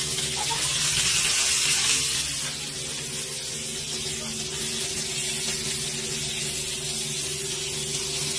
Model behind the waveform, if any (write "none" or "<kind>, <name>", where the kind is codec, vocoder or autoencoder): none